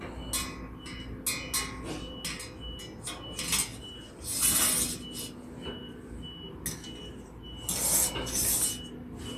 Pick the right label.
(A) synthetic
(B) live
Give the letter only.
B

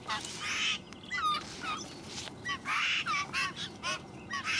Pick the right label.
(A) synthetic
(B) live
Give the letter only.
B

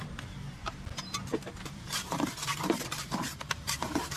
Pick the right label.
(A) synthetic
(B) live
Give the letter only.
A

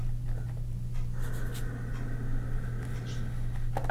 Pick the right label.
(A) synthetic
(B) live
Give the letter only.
B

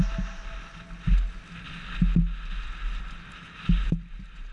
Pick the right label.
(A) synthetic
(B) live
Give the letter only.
B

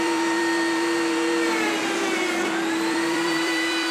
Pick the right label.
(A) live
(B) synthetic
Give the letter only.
B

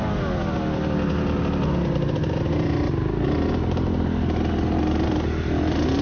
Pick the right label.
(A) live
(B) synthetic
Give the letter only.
A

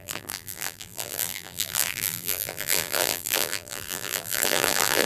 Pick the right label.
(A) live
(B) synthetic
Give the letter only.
B